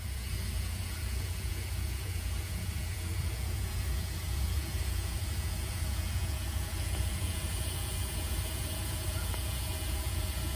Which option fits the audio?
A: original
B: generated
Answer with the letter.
B